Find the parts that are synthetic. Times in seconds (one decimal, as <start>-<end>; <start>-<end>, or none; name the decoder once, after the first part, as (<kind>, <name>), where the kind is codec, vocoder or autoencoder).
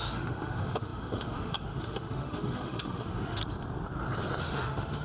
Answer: 0.0-3.4 (autoencoder, DAC-VAE); 4.4-5.0